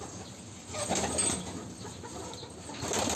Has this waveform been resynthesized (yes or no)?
no